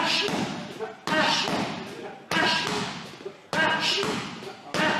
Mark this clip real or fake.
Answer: real